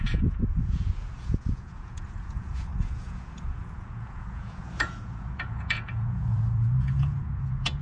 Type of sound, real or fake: fake